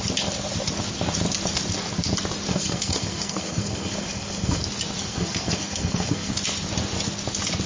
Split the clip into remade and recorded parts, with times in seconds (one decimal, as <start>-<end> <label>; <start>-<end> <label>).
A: 0.0-2.5 recorded; 2.5-4.6 remade; 4.6-5.0 recorded; 5.0-6.3 remade; 6.3-7.7 recorded